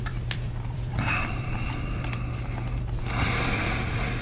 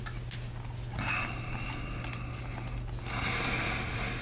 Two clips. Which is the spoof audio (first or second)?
first